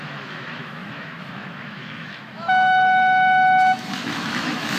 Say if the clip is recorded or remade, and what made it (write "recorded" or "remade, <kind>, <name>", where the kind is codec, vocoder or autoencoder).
remade, autoencoder, DAC-VAE